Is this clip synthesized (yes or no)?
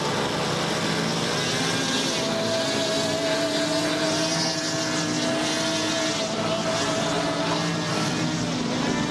no